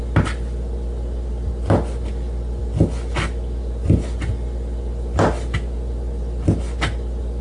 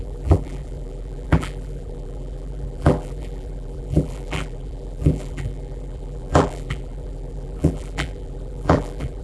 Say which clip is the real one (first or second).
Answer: first